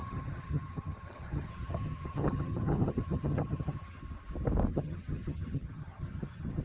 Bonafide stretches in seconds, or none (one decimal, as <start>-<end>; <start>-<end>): 4.0-4.7